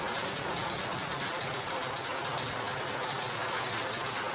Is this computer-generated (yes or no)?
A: no